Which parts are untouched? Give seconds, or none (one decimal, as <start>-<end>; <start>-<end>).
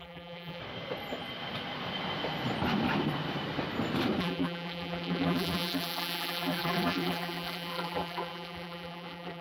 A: 0.6-4.2